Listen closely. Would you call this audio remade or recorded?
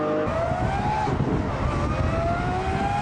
recorded